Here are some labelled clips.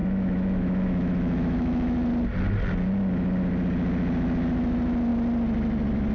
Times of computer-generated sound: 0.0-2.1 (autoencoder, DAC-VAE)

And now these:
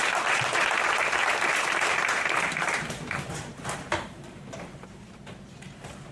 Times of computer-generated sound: 0.0-0.6 (vocoder, BigVGAN v2); 1.5-5.2

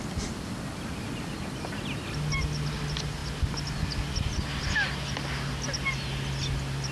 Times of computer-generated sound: none

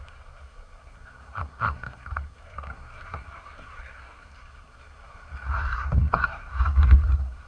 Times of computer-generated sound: 0.0-7.5 (codec, SNAC)

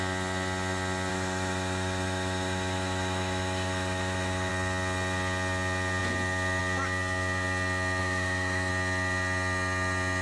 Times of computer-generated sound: 1.1-4.5 (autoencoder, DAC-VAE); 8.0-8.7

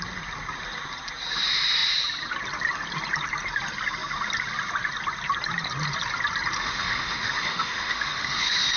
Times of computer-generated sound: 6.6-8.8 (autoencoder, DAC-VAE)

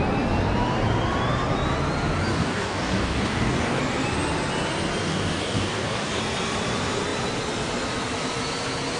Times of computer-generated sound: 2.3-3.8 (codec, DAC); 5.1-6.2

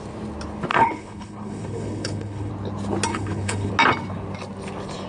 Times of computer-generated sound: 0.7-2.5 (codec, HILCodec); 3.1-3.7